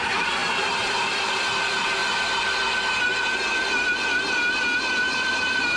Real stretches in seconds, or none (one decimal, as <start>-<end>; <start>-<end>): 2.0-5.3